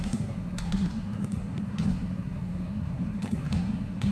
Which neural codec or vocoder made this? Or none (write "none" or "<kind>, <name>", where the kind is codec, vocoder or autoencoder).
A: codec, SNAC